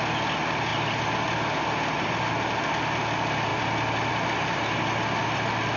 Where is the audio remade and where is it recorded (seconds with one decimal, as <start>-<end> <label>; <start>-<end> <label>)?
0.0-5.8 recorded